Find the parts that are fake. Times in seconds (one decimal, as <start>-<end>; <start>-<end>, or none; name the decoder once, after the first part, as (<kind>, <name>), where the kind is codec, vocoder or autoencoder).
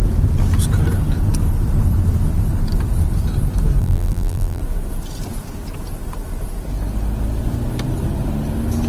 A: 3.8-4.6 (vocoder, BigVGAN v2)